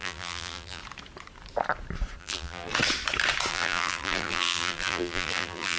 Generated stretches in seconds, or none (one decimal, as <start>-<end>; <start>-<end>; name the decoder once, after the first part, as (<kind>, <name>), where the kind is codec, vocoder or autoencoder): 0.0-0.8 (vocoder, BigVGAN v2); 2.2-2.7; 3.5-5.8